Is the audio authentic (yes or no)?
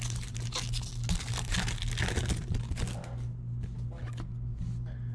yes